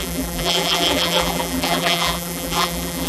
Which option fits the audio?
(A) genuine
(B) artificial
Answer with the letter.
B